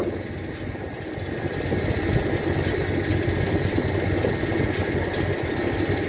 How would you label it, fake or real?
real